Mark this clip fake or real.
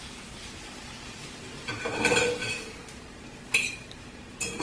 real